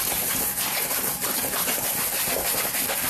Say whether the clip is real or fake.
real